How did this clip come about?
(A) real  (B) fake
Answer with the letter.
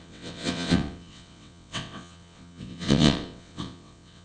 B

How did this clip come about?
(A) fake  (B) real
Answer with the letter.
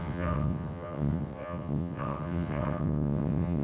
A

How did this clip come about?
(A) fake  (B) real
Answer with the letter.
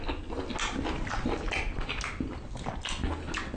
B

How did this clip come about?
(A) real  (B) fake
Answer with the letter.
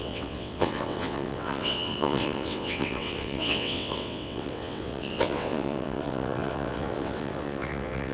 B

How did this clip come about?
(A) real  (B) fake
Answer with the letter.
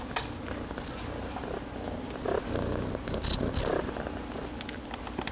A